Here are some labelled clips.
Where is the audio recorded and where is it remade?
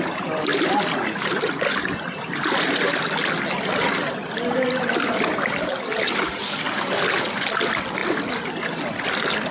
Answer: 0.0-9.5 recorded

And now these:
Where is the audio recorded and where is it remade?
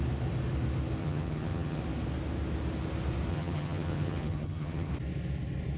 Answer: 0.0-1.0 recorded; 1.0-1.8 remade; 1.8-3.3 recorded; 3.3-4.9 remade; 4.9-5.8 recorded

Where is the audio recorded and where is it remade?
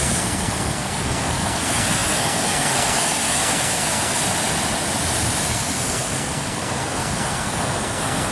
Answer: 0.0-4.2 remade; 4.2-5.5 recorded; 5.5-8.3 remade